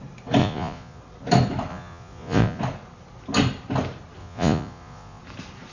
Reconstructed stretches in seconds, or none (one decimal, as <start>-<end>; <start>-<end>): 0.4-1.0; 1.7-2.6; 4.2-5.2